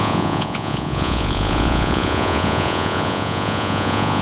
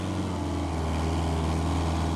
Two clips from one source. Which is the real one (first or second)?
second